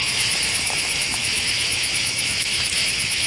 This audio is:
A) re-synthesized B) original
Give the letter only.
A